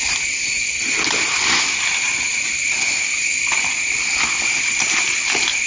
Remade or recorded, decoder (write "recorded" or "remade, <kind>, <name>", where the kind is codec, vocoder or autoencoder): recorded